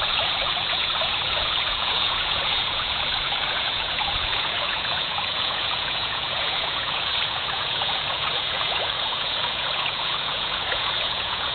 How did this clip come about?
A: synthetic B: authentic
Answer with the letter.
A